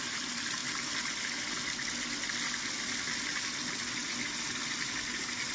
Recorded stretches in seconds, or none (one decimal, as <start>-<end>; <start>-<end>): 0.0-5.5